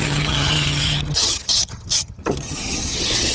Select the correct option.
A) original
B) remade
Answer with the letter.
B